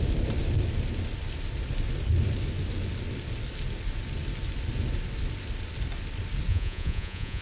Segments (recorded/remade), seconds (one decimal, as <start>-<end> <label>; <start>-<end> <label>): 0.0-6.5 recorded; 6.5-7.4 remade